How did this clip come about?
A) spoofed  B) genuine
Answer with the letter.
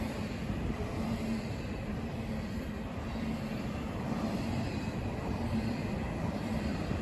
A